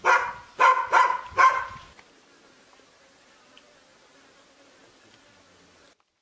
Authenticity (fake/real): real